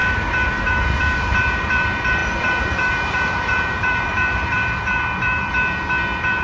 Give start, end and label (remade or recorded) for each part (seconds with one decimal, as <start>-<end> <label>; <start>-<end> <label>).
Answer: 0.0-6.4 remade